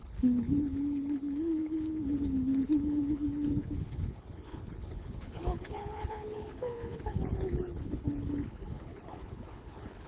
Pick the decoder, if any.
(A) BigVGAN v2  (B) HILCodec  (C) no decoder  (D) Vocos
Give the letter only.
B